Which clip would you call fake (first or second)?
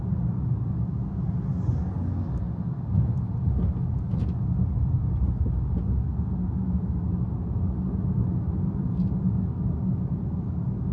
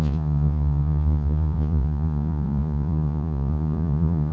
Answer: second